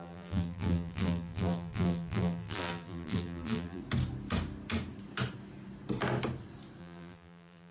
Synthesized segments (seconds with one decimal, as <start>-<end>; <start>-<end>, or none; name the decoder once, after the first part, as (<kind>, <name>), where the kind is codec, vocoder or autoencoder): 0.0-3.8 (vocoder, BigVGAN v2); 6.8-7.7